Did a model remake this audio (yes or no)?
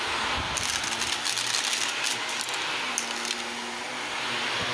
no